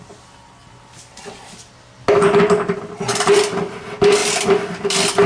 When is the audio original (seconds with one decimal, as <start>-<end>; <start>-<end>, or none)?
0.0-5.3